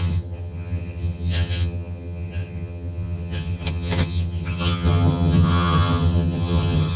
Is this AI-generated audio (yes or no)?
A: yes